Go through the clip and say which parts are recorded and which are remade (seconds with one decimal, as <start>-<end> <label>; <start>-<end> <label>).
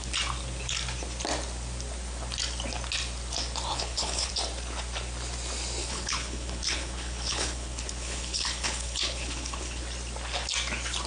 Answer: 0.0-3.7 recorded; 3.7-4.3 remade; 4.3-5.8 recorded; 5.8-9.8 remade; 9.8-11.1 recorded